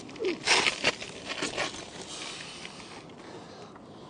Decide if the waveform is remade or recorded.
recorded